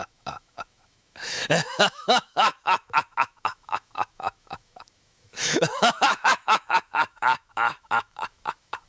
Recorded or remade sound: remade